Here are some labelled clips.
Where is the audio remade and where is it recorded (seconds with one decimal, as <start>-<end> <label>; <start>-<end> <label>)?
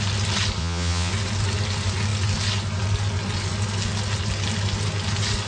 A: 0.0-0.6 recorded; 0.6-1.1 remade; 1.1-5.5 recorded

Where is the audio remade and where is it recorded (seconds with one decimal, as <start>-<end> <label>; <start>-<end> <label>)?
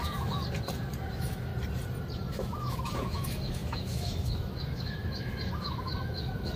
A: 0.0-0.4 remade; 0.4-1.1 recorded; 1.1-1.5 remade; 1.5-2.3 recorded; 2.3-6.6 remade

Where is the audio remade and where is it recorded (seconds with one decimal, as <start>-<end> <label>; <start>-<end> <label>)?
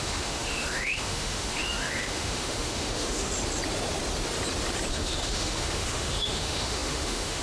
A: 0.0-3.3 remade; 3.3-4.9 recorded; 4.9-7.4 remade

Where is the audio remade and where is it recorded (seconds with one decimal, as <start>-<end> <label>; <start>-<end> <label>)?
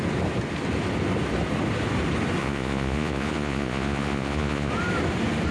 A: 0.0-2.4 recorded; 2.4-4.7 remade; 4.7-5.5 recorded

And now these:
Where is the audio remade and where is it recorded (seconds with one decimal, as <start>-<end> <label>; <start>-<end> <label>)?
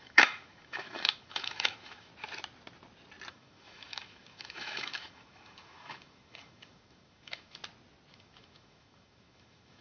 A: 0.0-2.1 remade; 2.1-3.3 recorded; 3.3-7.6 remade; 7.6-8.1 recorded; 8.1-9.8 remade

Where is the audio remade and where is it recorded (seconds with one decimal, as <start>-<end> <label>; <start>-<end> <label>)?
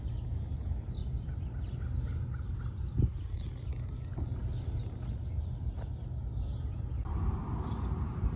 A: 0.0-8.4 recorded